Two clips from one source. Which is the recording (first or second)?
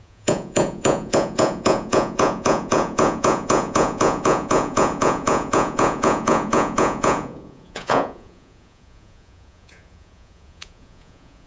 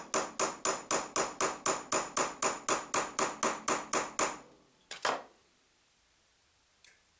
second